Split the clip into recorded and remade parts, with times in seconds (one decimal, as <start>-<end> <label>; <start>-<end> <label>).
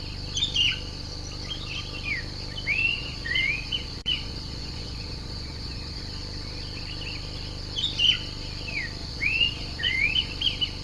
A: 0.0-2.9 recorded; 2.9-6.0 remade; 6.0-9.0 recorded; 9.0-10.3 remade; 10.3-10.8 recorded